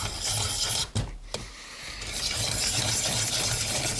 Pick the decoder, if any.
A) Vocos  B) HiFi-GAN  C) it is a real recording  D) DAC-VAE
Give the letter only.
C